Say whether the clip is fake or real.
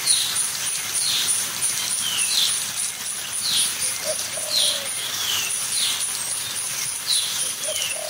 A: real